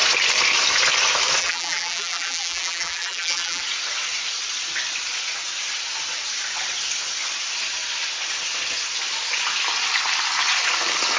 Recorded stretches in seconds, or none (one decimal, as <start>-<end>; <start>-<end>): 0.0-1.4; 3.6-11.2